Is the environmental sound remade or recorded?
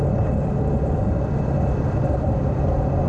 remade